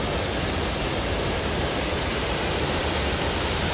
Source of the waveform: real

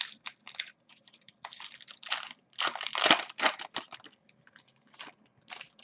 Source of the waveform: fake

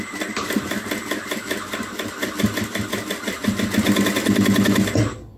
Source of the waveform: real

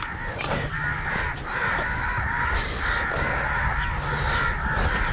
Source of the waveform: real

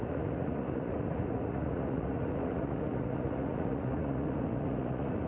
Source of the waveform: fake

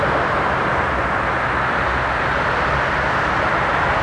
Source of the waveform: real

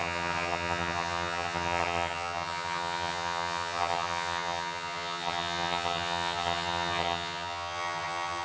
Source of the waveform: fake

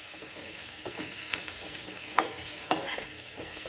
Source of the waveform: fake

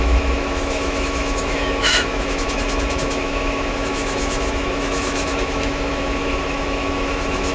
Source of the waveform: fake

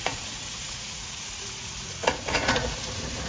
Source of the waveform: fake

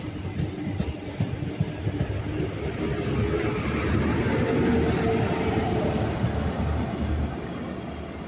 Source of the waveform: real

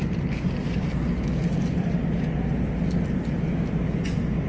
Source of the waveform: real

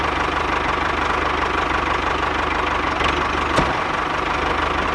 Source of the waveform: real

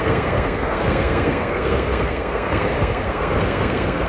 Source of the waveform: fake